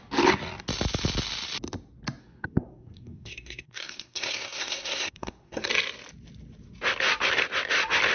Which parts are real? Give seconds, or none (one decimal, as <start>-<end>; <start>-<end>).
0.0-2.2; 5.7-8.1